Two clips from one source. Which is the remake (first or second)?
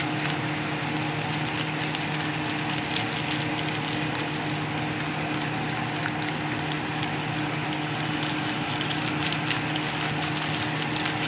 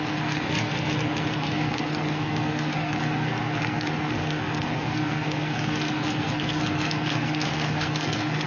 second